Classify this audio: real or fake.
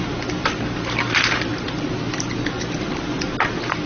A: real